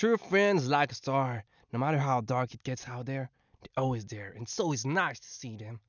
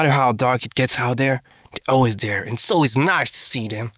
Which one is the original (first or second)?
first